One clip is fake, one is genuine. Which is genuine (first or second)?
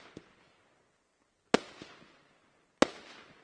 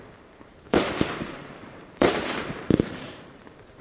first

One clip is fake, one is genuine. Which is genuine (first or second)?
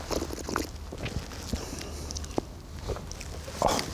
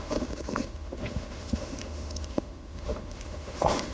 first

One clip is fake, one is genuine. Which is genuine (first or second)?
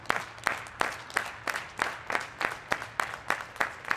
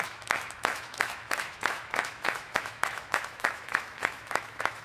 first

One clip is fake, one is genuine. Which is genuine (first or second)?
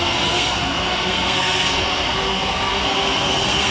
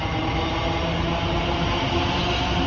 second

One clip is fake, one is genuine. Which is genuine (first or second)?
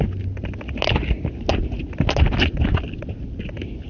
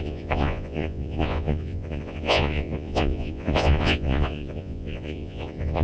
first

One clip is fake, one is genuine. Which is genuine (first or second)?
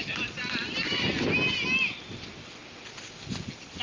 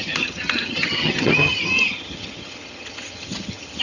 first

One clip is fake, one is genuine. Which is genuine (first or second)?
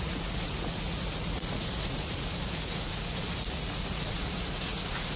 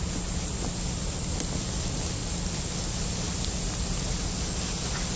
second